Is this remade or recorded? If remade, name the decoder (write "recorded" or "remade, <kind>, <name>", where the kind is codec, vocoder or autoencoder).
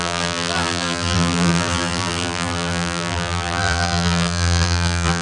remade, vocoder, BigVGAN v2